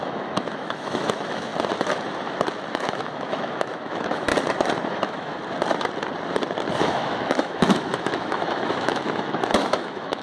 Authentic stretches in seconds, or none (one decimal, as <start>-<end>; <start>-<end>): 1.5-2.7; 4.3-4.9; 5.4-6.8